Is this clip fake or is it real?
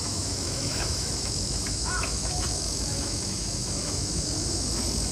fake